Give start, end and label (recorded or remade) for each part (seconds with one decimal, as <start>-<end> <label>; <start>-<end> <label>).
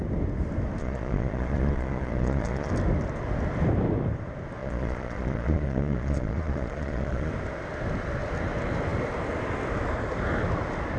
0.0-0.8 recorded; 0.8-2.7 remade; 2.7-4.6 recorded; 4.6-7.3 remade; 7.3-11.0 recorded